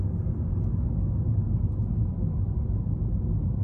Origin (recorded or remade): recorded